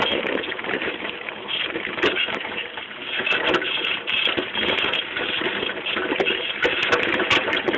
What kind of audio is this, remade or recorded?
remade